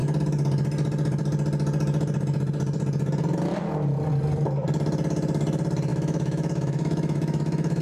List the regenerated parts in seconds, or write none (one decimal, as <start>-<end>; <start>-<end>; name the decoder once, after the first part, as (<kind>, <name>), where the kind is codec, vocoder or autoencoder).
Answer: 5.9-7.8 (autoencoder, DAC-VAE)